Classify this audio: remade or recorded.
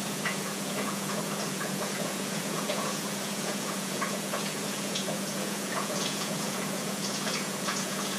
remade